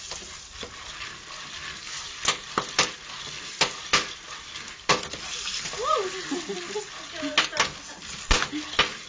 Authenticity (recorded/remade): recorded